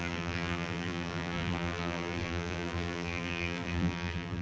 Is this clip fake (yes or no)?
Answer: yes